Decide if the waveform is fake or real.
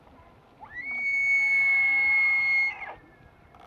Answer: real